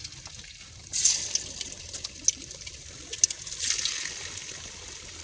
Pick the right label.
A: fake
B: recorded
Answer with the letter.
B